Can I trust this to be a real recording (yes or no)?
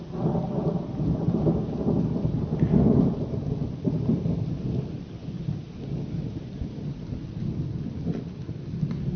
yes